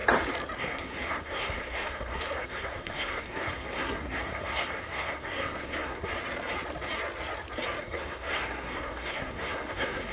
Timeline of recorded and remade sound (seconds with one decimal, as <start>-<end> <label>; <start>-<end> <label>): 0.0-0.6 recorded; 0.6-6.1 remade; 6.1-7.8 recorded; 7.8-10.1 remade

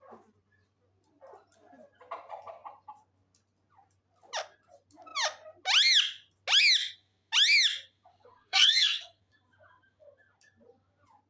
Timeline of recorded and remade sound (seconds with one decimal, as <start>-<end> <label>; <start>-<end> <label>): 0.0-8.1 recorded; 8.1-9.2 remade; 9.2-11.3 recorded

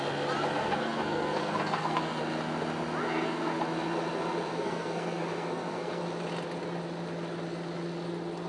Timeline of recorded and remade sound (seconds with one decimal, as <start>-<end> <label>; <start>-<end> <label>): 0.0-0.6 recorded; 0.6-2.2 remade; 2.2-3.0 recorded; 3.0-3.6 remade; 3.6-4.5 recorded; 4.5-6.0 remade; 6.0-8.5 recorded

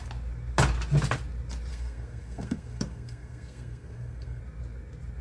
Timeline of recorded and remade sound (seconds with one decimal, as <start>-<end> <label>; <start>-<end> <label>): 0.0-1.7 recorded; 1.7-4.4 remade; 4.4-5.2 recorded

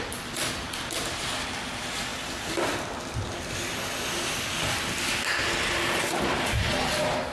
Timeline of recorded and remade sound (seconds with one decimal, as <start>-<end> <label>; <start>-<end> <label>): 0.0-7.3 recorded

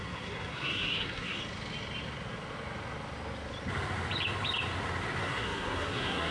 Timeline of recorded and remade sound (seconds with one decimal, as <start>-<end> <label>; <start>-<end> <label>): 0.0-1.4 remade; 1.4-5.2 recorded; 5.2-6.3 remade